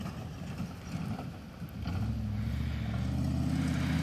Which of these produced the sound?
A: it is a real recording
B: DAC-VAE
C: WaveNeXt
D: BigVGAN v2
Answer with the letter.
A